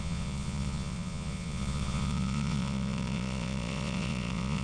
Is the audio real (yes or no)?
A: no